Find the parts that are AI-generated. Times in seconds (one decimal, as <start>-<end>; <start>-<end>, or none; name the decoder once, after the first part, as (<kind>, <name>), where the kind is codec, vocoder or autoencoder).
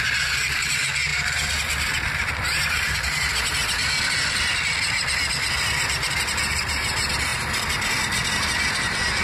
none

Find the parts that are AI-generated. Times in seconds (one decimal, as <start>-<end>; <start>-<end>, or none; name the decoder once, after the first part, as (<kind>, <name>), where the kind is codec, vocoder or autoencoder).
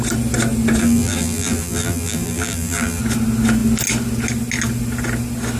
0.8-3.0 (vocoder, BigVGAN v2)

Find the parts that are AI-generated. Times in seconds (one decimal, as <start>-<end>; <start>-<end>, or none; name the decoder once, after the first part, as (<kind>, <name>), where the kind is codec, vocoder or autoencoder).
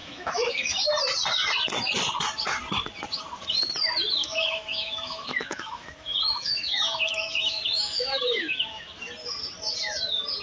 0.0-0.9 (autoencoder, DAC-VAE); 4.2-9.0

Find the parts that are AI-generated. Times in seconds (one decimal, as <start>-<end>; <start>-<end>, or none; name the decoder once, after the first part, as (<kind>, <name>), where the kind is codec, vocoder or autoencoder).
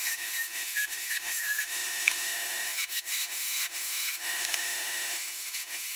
0.0-6.0 (autoencoder, DAC-VAE)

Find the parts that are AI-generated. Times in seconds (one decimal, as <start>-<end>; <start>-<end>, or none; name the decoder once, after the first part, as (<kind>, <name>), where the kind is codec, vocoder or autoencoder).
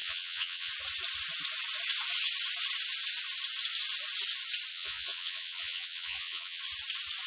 0.0-0.7 (vocoder, Vocos); 4.7-6.6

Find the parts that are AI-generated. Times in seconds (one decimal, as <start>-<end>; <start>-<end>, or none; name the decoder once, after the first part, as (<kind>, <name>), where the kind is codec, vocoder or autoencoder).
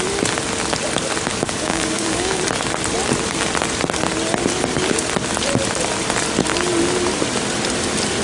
1.3-2.4 (codec, DAC)